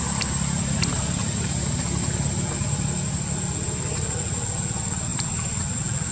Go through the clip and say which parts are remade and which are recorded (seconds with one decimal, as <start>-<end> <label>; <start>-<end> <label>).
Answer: 0.0-6.1 recorded